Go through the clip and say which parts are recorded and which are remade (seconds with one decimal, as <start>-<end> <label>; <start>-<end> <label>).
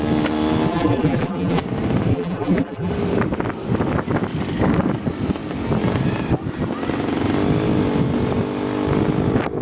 0.0-0.7 recorded; 0.7-1.6 remade; 1.6-2.1 recorded; 2.1-2.9 remade; 2.9-9.6 recorded